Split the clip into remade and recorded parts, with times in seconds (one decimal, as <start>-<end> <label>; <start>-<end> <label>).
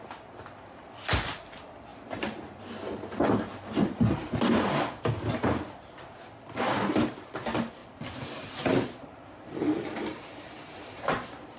0.0-7.8 recorded; 7.8-11.6 remade